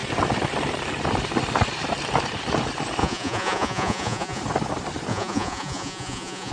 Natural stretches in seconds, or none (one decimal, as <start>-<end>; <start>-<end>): 0.0-3.0; 4.4-5.1